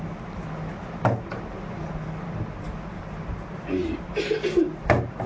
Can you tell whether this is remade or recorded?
recorded